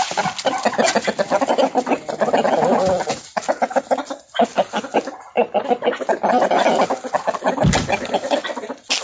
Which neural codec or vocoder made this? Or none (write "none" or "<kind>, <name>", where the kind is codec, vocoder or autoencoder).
none